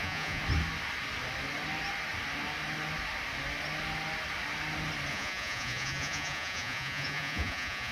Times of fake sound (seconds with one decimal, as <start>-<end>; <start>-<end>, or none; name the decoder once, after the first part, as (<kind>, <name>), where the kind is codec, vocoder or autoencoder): 0.0-0.4 (vocoder, Vocos); 5.1-7.9